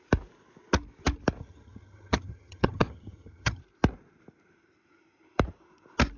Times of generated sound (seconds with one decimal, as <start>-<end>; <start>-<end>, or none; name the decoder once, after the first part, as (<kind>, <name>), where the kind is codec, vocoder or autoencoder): 1.4-3.6 (vocoder, HiFi-GAN)